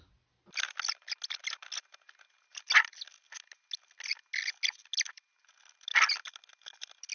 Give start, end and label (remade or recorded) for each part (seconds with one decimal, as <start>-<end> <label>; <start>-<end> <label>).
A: 0.0-7.1 recorded